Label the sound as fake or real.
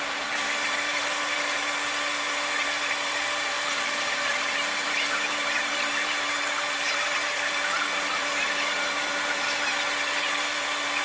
fake